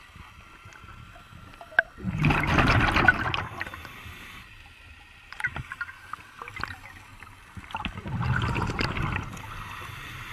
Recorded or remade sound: recorded